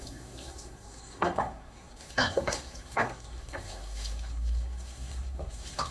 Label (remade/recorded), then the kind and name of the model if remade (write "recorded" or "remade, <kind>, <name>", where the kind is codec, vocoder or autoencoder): remade, codec, SNAC